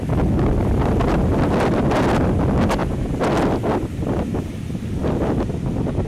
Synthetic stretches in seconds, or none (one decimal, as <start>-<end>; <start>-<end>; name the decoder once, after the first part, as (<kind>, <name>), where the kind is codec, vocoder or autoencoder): none